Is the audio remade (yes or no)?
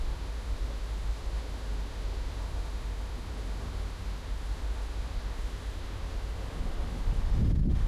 yes